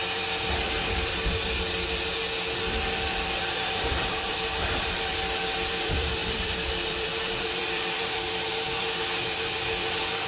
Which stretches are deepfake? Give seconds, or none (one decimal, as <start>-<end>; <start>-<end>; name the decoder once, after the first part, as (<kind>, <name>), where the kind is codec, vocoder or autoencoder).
0.0-1.1 (vocoder, BigVGAN v2); 2.8-10.3